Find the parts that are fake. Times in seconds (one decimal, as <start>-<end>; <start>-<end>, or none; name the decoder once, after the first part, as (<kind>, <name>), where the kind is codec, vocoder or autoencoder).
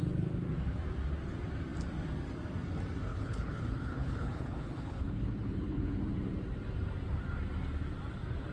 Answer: 3.1-6.0 (codec, HILCodec)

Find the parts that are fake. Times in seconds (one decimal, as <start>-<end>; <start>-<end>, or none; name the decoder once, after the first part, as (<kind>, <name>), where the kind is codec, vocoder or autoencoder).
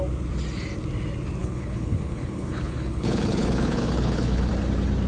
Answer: 1.4-4.5 (codec, HILCodec)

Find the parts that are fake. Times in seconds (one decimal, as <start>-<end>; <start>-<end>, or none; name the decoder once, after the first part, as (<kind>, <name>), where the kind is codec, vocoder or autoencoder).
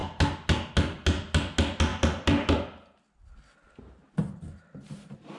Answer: none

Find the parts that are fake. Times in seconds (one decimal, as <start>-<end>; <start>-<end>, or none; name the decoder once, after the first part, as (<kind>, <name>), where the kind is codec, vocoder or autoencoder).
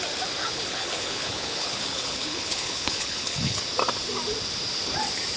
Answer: 0.4-3.6 (codec, HILCodec)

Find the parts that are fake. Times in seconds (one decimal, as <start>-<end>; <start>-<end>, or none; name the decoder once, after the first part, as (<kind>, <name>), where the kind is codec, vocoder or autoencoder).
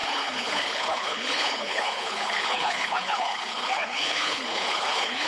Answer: 0.0-5.3 (codec, HILCodec)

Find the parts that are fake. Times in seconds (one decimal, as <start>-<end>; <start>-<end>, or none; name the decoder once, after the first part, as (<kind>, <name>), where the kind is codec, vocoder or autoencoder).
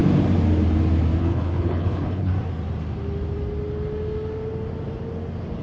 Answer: 1.2-2.3 (codec, HILCodec)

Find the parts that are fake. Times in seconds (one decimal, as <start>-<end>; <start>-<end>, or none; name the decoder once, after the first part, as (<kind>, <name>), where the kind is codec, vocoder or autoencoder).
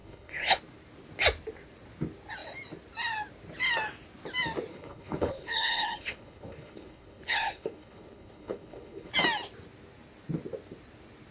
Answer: 0.0-0.6 (codec, HILCodec); 4.7-9.1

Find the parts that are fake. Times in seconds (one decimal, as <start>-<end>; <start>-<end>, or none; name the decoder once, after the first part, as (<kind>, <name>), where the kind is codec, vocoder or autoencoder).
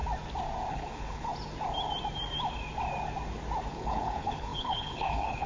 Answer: 0.7-1.3 (codec, HILCodec); 3.7-5.5